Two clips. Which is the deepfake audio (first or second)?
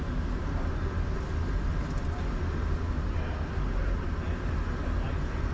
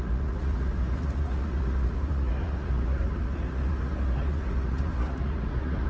second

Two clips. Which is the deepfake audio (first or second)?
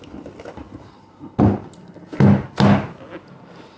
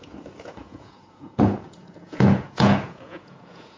second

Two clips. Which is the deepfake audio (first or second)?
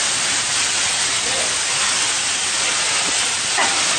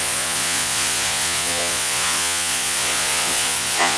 second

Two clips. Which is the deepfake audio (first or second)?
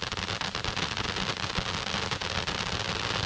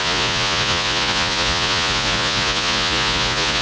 second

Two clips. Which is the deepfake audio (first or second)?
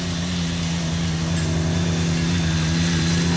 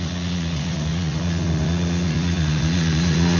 second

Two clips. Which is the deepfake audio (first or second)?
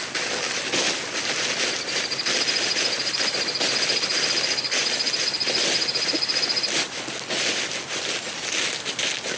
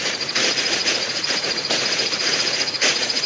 second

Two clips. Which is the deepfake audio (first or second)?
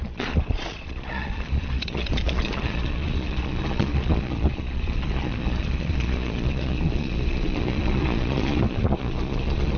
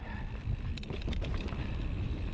first